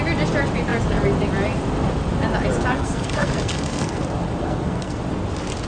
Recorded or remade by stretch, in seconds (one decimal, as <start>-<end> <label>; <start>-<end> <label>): 0.0-2.7 recorded; 2.7-4.0 remade; 4.0-4.4 recorded; 4.4-5.0 remade; 5.0-5.7 recorded